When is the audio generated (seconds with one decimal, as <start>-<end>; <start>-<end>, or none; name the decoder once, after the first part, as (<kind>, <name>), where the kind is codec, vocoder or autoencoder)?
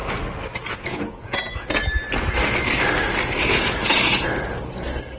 0.7-1.8 (vocoder, Vocos); 3.4-4.3